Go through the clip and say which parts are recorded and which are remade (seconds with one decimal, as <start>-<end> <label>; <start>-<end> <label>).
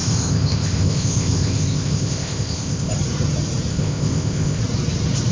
0.0-2.9 remade; 2.9-3.7 recorded; 3.7-4.6 remade; 4.6-5.3 recorded